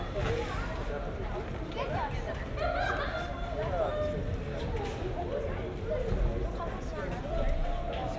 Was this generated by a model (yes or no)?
no